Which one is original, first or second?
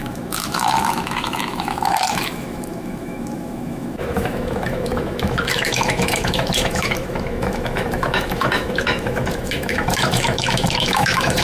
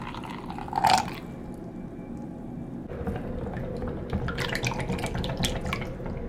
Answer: second